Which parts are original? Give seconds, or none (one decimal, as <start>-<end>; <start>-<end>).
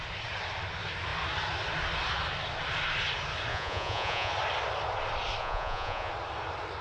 0.0-3.5; 4.3-5.4; 6.1-6.8